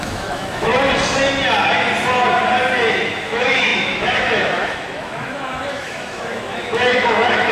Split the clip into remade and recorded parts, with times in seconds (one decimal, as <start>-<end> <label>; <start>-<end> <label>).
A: 0.0-0.7 remade; 0.7-2.9 recorded; 2.9-7.5 remade